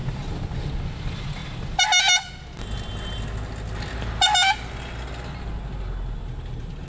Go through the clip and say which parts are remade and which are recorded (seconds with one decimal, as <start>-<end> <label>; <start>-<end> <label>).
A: 0.0-6.9 recorded